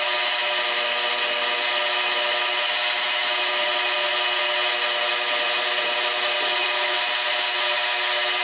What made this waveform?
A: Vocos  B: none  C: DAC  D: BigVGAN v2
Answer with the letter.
B